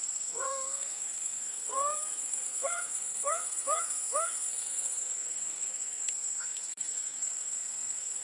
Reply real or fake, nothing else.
fake